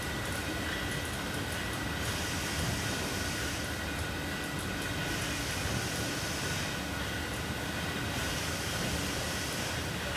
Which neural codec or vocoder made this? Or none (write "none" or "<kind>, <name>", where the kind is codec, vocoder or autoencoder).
none